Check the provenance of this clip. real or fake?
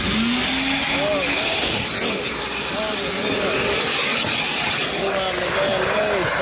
real